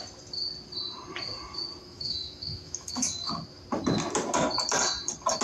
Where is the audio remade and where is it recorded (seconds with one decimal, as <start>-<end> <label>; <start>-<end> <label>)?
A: 0.0-1.8 recorded; 1.8-3.3 remade; 3.3-5.4 recorded

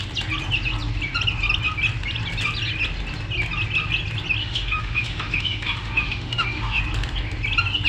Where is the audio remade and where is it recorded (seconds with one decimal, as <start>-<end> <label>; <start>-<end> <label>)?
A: 0.0-4.4 recorded; 4.4-6.8 remade; 6.8-7.9 recorded

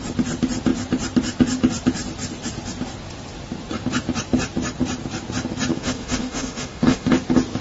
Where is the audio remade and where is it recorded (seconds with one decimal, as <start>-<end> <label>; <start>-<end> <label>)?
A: 0.0-5.7 recorded; 5.7-7.1 remade; 7.1-7.6 recorded

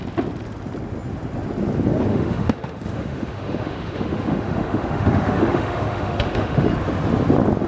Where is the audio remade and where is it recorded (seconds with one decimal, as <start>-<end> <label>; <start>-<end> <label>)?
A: 0.0-2.1 recorded; 2.1-6.7 remade; 6.7-7.7 recorded